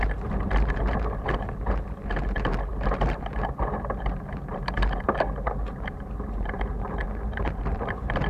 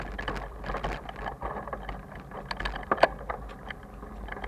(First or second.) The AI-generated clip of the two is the first